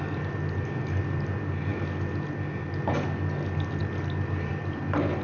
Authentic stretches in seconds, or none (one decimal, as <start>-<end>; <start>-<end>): 0.0-5.2